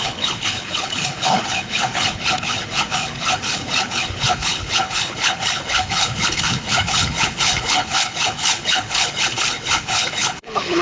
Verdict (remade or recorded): remade